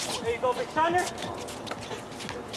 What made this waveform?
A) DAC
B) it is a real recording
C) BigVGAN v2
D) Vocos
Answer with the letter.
B